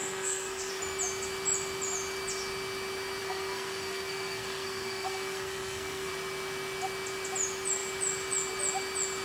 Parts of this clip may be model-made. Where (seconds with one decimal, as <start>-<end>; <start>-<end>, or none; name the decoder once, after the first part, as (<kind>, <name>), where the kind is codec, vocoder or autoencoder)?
0.0-0.7 (codec, SNAC); 3.2-6.1